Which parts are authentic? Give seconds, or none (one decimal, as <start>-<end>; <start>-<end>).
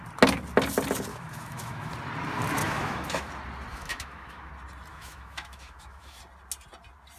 0.0-1.1; 1.9-2.6; 3.3-3.7; 4.5-4.9; 6.2-7.2